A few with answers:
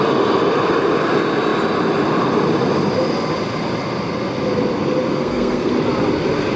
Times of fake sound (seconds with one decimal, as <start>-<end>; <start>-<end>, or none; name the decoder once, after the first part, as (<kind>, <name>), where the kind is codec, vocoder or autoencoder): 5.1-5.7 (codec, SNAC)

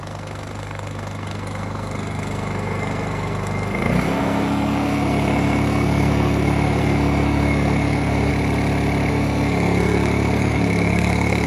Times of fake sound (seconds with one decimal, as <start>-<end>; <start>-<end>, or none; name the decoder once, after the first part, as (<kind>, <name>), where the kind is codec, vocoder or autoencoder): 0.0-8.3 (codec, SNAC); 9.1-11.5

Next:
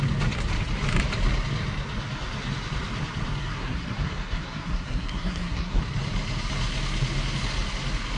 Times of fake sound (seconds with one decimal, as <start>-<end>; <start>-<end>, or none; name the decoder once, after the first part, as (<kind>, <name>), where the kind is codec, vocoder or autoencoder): 3.4-5.8 (codec, SNAC)